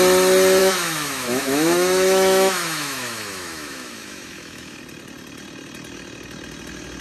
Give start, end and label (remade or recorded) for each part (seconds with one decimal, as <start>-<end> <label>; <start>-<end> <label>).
0.0-0.6 recorded; 0.6-4.8 remade; 4.8-7.0 recorded